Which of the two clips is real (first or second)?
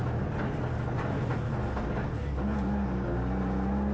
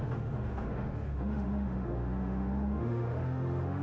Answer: first